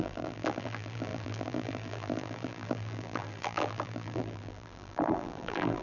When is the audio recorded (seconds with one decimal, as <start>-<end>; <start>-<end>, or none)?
none